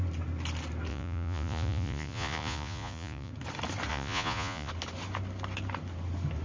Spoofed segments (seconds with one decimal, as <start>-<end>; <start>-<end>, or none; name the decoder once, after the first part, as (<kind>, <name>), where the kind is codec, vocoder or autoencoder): 0.9-3.3 (vocoder, Vocos); 3.9-4.7